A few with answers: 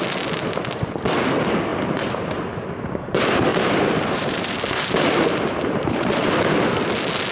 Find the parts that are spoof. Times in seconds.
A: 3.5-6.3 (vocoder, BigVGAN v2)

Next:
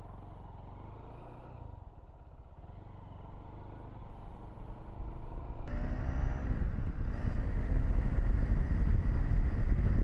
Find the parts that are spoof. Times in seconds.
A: none

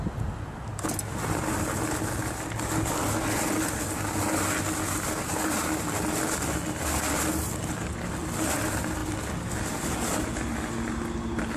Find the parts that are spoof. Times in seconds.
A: none

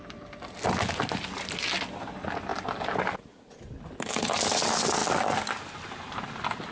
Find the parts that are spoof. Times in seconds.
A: none

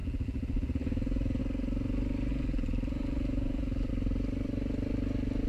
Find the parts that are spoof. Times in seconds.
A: 0.0-1.4 (vocoder, BigVGAN v2); 2.3-3.9

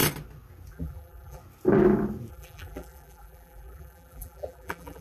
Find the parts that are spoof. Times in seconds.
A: 0.7-1.4 (vocoder, BigVGAN v2); 2.3-5.0

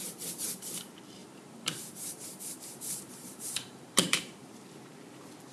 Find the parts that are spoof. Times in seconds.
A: 1.2-4.5 (vocoder, BigVGAN v2)

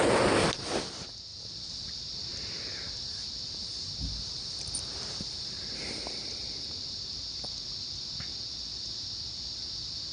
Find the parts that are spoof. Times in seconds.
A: 1.3-1.9 (vocoder, BigVGAN v2); 2.3-7.2